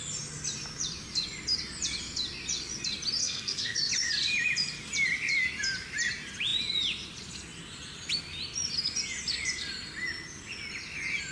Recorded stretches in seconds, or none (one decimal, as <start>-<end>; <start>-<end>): 0.0-3.2; 3.9-11.3